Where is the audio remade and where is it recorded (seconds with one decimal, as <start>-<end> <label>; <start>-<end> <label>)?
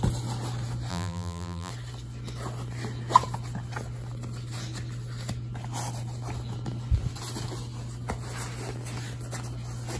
0.0-0.9 recorded; 0.9-1.7 remade; 1.7-10.0 recorded